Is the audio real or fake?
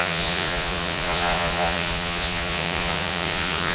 fake